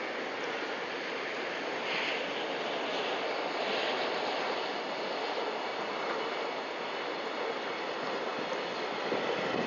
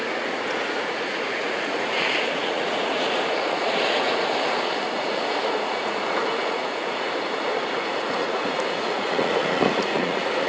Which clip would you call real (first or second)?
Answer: first